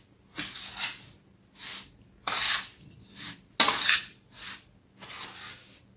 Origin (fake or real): real